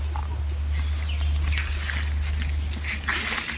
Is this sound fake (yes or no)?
no